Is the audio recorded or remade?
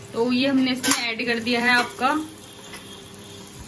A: remade